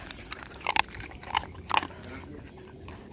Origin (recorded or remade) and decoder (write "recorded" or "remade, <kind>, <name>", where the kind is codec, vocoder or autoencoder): remade, vocoder, BigVGAN v2